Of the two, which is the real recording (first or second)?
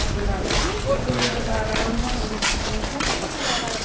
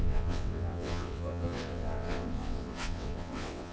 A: first